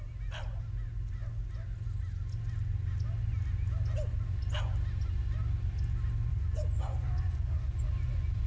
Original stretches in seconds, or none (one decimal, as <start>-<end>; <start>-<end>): 0.0-6.3